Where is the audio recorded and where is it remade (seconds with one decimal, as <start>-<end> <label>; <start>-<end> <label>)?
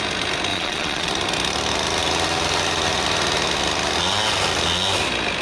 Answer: 0.0-0.5 recorded; 0.5-1.1 remade; 1.1-5.4 recorded